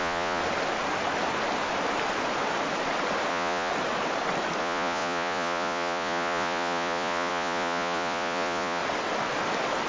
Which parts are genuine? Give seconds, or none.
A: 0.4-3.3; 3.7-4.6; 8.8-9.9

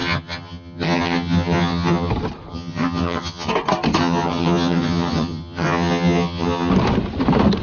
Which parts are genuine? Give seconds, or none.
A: 2.1-2.5; 3.5-4.0; 6.7-7.6

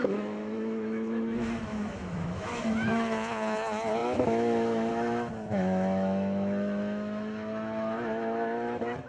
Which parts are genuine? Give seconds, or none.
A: none

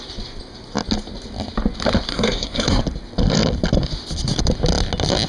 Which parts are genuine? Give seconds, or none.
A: 0.0-2.1; 2.8-5.3

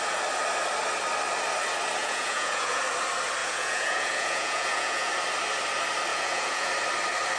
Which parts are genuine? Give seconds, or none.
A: 0.0-2.0; 2.8-3.4; 5.1-6.1; 6.7-7.4

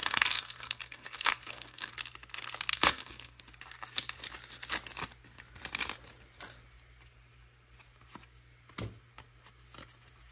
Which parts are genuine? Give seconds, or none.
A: 1.9-2.7; 3.4-10.3